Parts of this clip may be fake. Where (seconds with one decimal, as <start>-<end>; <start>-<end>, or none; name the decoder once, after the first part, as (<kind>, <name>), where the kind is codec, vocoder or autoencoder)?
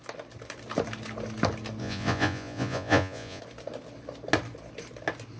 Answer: 1.8-3.4 (vocoder, Vocos)